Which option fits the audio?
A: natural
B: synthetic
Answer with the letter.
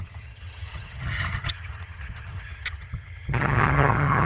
B